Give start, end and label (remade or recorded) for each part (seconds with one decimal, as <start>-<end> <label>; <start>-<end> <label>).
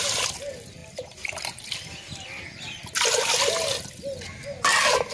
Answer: 0.0-5.1 recorded